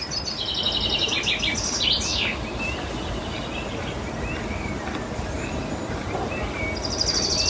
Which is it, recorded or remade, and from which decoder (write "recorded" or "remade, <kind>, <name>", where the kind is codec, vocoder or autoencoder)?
recorded